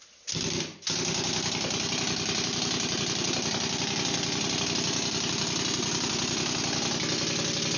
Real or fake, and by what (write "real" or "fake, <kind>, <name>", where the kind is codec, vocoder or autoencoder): real